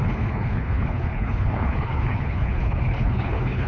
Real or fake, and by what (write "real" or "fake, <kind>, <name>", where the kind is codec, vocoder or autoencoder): fake, codec, HILCodec